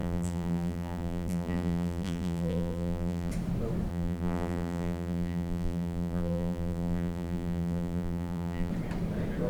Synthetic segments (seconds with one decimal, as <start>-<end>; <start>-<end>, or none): 0.0-3.3; 3.9-8.7